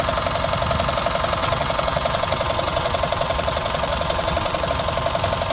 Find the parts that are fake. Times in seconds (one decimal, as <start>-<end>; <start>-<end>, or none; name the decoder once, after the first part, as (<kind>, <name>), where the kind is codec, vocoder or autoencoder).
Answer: 1.4-4.7 (vocoder, WaveNeXt)